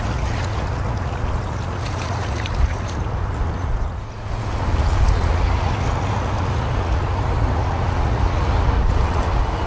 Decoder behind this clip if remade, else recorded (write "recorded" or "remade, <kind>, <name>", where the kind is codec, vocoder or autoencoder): remade, vocoder, Vocos